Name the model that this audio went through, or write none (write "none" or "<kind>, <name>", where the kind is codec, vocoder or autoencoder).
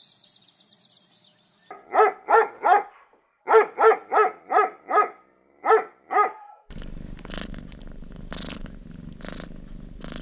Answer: none